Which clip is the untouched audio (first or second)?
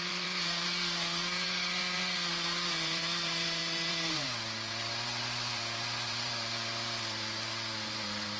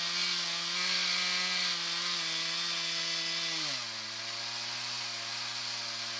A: second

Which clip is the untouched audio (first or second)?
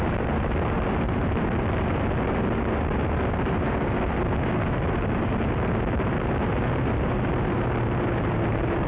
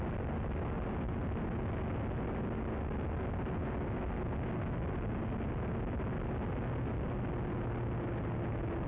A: second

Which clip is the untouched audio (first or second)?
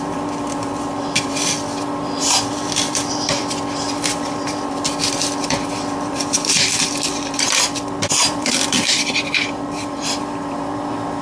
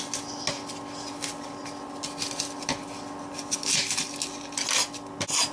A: second